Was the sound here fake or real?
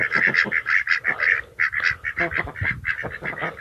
real